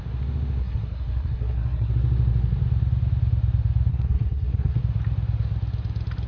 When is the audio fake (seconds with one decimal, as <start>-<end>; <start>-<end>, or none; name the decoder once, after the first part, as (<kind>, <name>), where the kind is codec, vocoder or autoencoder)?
0.6-1.9 (codec, SNAC); 3.9-4.8